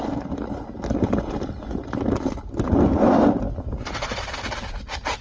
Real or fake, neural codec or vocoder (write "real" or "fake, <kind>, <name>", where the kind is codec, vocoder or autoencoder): real